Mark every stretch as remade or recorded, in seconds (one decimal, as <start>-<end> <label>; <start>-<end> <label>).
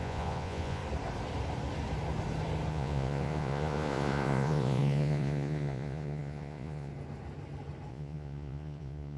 0.0-0.8 remade; 0.8-2.7 recorded; 2.7-6.9 remade; 6.9-7.9 recorded; 7.9-9.2 remade